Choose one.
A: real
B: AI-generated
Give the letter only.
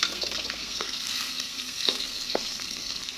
B